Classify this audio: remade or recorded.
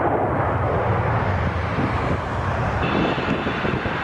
recorded